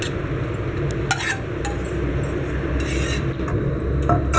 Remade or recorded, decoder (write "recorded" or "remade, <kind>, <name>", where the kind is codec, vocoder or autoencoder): recorded